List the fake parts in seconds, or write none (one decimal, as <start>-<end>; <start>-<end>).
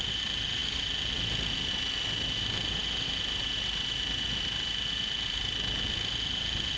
none